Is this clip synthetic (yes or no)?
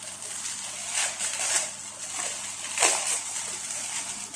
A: no